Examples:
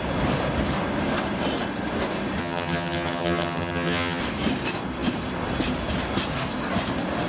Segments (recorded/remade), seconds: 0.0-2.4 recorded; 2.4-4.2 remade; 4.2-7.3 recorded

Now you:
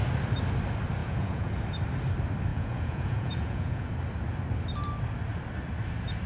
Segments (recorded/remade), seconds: 0.0-1.0 recorded; 1.0-1.5 remade; 1.5-2.5 recorded; 2.5-3.9 remade; 3.9-6.3 recorded

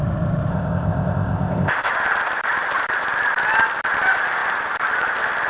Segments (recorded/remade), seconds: 0.0-0.5 recorded; 0.5-1.9 remade; 1.9-5.5 recorded

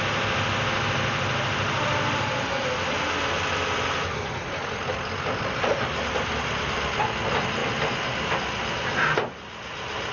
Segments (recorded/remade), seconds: 0.0-10.1 recorded

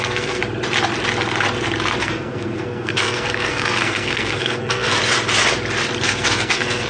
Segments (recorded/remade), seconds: 0.0-0.4 remade; 0.4-2.0 recorded; 2.0-5.0 remade; 5.0-6.0 recorded; 6.0-6.9 remade